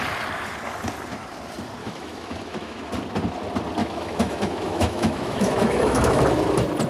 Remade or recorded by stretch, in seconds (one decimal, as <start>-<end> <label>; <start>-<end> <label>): 0.0-1.8 recorded; 1.8-2.9 remade; 2.9-3.8 recorded; 3.8-6.2 remade; 6.2-6.9 recorded